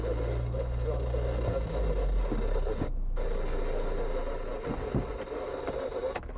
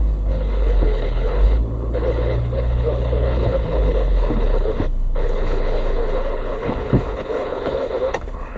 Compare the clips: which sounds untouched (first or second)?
first